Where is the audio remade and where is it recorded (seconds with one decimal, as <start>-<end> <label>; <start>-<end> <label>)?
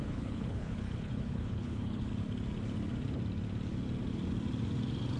0.0-2.1 remade; 2.1-5.2 recorded